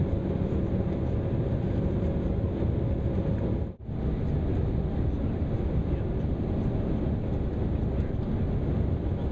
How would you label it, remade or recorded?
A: recorded